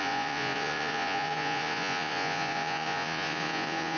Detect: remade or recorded remade